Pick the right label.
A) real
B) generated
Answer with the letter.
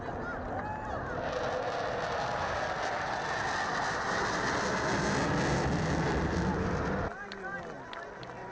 A